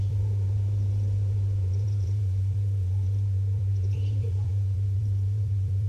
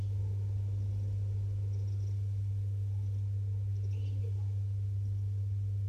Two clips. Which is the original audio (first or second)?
second